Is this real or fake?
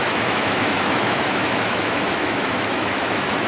fake